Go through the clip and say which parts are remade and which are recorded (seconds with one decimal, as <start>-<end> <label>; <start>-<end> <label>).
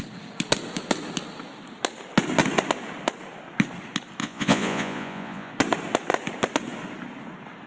0.0-4.2 recorded; 4.2-5.5 remade; 5.5-7.7 recorded